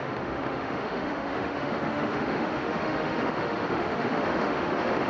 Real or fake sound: fake